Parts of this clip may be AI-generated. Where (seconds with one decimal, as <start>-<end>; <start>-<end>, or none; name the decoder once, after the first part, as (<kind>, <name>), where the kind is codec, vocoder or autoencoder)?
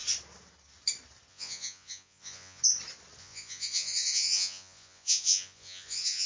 1.3-2.6 (vocoder, Vocos); 3.2-6.3